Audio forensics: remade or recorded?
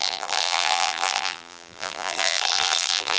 remade